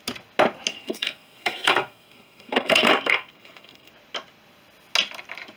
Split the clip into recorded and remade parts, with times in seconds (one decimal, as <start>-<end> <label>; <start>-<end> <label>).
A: 0.0-0.7 recorded; 0.7-3.9 remade; 3.9-5.6 recorded